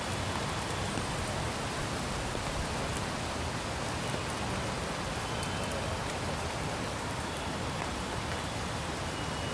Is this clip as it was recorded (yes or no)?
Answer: yes